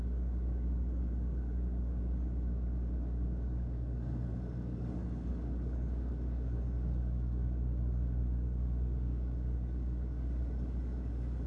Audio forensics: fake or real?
fake